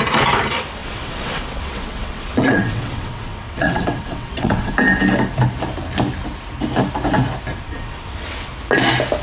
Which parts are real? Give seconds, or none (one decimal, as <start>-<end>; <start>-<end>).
0.0-0.8; 4.7-7.5; 8.5-9.2